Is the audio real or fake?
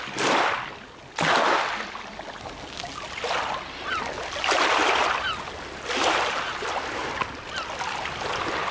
real